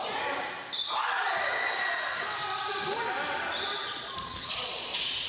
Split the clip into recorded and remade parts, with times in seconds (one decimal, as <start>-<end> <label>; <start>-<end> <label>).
0.0-3.9 recorded; 3.9-5.3 remade